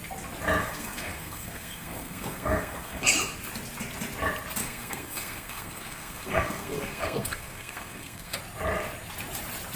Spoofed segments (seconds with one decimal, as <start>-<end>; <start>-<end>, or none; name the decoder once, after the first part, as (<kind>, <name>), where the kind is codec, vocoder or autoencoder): 0.6-3.1 (codec, SNAC); 4.6-8.4